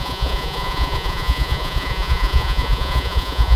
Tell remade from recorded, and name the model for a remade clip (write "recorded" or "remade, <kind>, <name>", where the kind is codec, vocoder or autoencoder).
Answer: remade, vocoder, Vocos